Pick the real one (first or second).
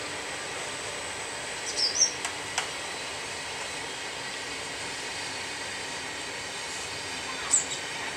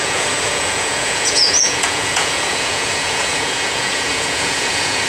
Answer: first